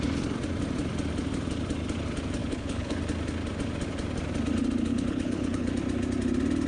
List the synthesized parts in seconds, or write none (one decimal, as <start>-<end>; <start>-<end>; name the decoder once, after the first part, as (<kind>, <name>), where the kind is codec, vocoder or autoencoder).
2.4-3.0 (codec, HILCodec); 4.9-5.7